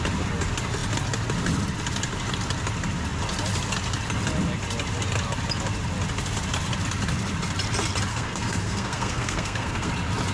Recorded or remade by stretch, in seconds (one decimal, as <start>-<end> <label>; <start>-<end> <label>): 0.0-8.1 recorded; 8.1-9.9 remade; 9.9-10.3 recorded